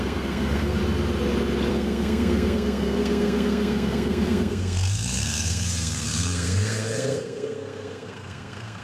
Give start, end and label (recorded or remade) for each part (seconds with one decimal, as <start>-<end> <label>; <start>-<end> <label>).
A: 0.0-0.8 remade; 0.8-1.7 recorded; 1.7-8.8 remade